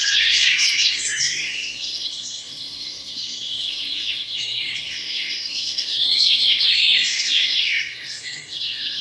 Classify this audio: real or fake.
fake